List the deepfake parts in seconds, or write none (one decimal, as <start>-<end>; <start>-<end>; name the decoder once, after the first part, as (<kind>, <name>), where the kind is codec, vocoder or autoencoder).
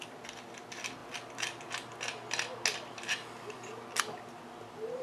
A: none